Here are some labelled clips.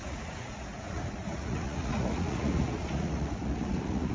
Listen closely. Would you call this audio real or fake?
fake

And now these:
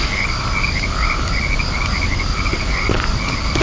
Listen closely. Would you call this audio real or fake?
real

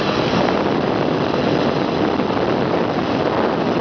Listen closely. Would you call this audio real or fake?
real